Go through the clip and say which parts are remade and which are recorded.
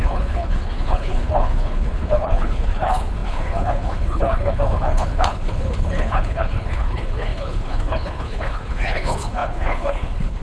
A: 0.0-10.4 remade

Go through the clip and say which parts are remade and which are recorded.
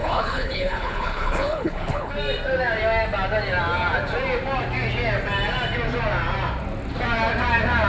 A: 0.0-2.1 remade; 2.1-7.9 recorded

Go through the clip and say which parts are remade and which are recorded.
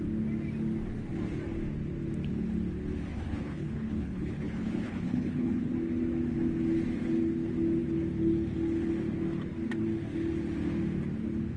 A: 0.0-3.1 recorded; 3.1-5.7 remade; 5.7-11.6 recorded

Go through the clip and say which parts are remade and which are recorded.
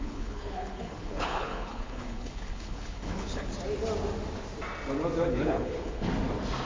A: 0.0-3.5 remade; 3.5-5.3 recorded; 5.3-6.1 remade; 6.1-6.7 recorded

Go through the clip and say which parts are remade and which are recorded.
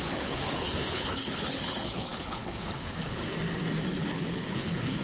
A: 0.0-3.2 remade; 3.2-4.0 recorded; 4.0-5.0 remade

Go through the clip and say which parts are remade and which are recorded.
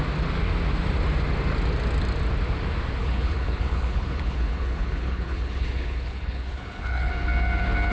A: 0.0-3.0 recorded; 3.0-7.1 remade; 7.1-7.9 recorded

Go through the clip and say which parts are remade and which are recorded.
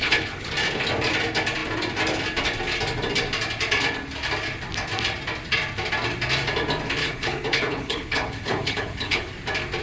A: 0.0-0.5 remade; 0.5-7.0 recorded; 7.0-9.3 remade; 9.3-9.8 recorded